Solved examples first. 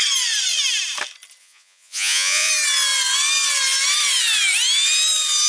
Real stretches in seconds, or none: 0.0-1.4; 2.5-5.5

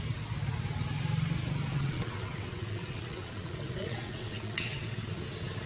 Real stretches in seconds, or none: 0.0-1.7; 5.1-5.7